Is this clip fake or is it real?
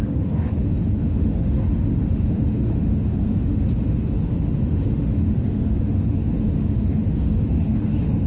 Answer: fake